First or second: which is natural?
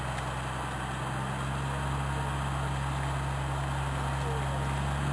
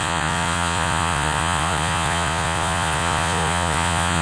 first